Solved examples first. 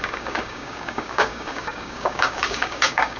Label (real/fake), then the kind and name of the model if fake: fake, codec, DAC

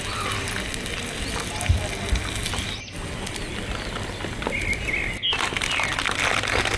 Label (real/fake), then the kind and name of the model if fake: real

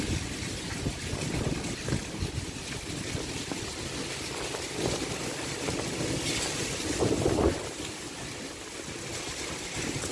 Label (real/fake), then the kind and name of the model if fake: real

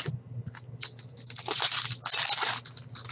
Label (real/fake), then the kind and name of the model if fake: real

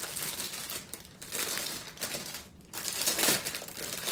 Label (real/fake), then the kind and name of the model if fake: real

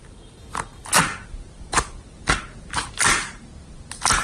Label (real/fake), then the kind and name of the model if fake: real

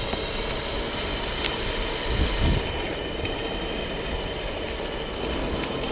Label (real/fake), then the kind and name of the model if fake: real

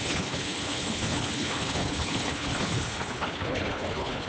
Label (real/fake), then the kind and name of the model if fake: fake, codec, HILCodec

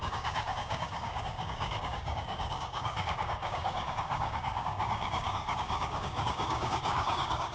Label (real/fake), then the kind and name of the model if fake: fake, codec, DAC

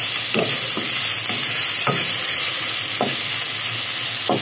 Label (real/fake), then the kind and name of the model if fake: real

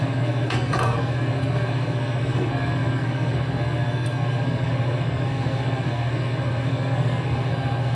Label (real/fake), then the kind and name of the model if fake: fake, codec, SNAC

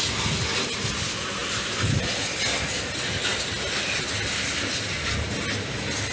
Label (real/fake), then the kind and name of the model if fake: real